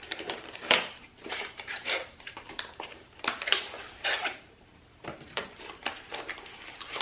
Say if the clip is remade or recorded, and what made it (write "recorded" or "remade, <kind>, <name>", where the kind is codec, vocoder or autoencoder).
remade, vocoder, BigVGAN v2